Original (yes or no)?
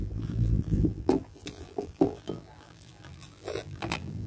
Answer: no